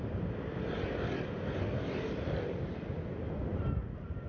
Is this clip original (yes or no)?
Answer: yes